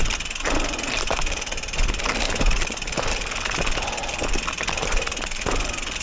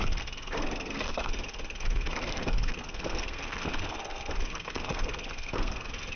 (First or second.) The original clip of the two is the first